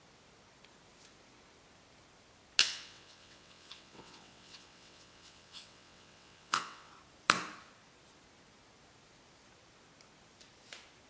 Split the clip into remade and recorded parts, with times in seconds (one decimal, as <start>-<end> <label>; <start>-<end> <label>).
0.0-2.6 recorded; 2.6-6.9 remade; 6.9-11.1 recorded